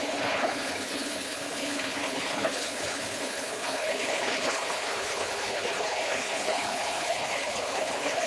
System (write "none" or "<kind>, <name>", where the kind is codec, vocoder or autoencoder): codec, HILCodec